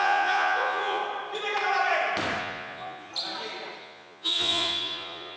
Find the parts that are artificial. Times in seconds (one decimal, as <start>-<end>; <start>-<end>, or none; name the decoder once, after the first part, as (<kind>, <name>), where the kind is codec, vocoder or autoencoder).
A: 0.0-1.0 (vocoder, Vocos); 2.4-3.1; 3.8-5.4